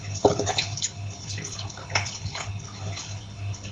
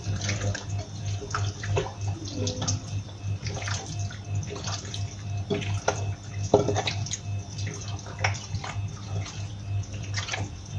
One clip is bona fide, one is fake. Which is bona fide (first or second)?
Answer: second